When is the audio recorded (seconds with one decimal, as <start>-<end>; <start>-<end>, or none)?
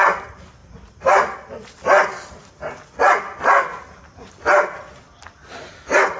0.0-6.2